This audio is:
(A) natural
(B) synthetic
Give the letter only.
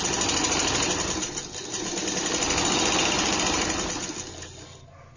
A